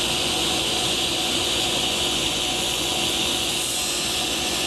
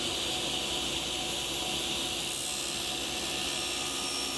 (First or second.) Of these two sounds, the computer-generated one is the first